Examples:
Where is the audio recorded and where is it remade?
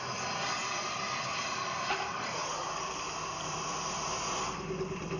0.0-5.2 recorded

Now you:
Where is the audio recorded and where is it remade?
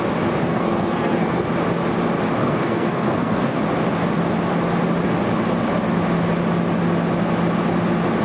0.0-0.4 recorded; 0.4-1.5 remade; 1.5-2.4 recorded; 2.4-3.6 remade; 3.6-8.2 recorded